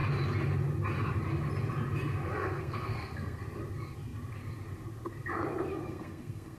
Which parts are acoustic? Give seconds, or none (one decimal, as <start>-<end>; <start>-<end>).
0.0-2.3; 3.4-5.7